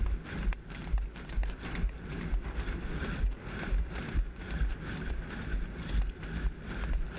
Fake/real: real